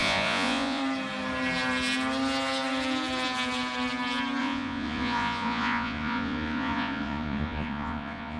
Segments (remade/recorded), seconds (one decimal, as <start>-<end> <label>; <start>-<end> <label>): 0.0-0.8 remade; 0.8-4.4 recorded; 4.4-8.4 remade